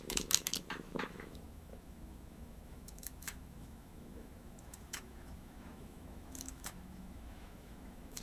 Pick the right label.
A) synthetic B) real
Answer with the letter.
A